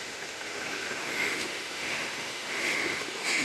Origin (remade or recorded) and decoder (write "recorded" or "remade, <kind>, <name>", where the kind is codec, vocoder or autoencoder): remade, autoencoder, DAC-VAE